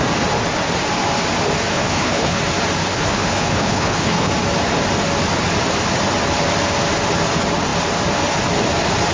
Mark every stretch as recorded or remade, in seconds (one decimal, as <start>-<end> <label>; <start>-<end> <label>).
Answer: 0.0-1.7 recorded; 1.7-2.4 remade; 2.4-2.8 recorded; 2.8-4.3 remade; 4.3-9.1 recorded